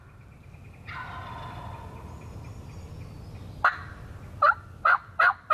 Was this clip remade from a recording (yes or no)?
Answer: no